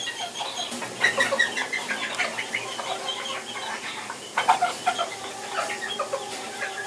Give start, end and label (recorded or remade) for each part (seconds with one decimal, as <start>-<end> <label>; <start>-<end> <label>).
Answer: 0.0-6.9 recorded